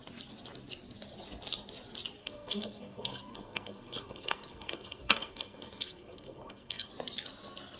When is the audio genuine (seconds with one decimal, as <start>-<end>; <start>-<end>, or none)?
0.0-2.2; 6.9-7.8